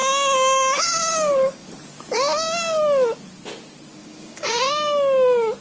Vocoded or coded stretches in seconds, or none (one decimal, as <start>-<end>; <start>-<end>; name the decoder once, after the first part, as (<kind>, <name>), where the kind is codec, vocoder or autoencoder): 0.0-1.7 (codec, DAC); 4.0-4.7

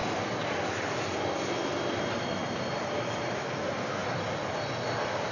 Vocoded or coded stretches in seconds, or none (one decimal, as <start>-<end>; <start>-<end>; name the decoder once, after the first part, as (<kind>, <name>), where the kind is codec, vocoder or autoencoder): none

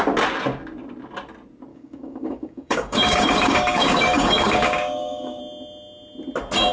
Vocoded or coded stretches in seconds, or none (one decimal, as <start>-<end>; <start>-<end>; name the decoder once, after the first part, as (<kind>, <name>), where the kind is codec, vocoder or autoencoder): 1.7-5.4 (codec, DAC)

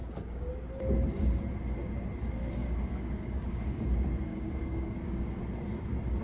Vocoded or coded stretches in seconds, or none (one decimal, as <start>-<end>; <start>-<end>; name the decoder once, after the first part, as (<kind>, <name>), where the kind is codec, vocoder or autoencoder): 0.0-0.5 (codec, DAC); 2.6-3.8; 4.3-5.4

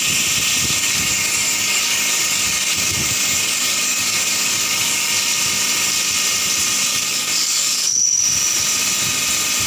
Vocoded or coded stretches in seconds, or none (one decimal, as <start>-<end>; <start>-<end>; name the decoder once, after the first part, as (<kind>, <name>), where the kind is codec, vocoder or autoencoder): 0.8-5.1 (codec, DAC); 6.9-8.2

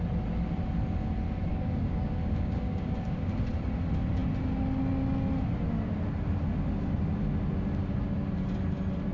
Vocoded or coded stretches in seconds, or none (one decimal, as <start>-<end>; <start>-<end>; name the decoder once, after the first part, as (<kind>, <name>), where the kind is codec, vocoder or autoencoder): 1.5-3.5 (codec, DAC)

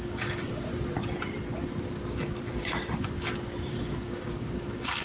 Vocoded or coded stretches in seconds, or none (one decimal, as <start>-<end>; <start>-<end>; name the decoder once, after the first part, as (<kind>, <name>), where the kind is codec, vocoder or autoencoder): 0.0-0.7 (codec, DAC); 3.7-5.0

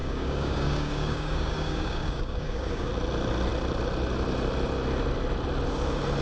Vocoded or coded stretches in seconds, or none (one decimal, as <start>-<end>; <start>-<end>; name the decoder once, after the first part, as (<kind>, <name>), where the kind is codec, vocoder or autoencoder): 0.0-2.9 (codec, DAC)